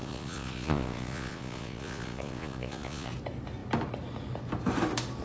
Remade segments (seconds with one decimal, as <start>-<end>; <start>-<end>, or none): 0.0-3.1